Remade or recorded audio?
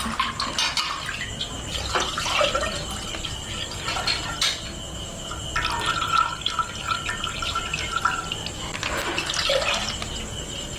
recorded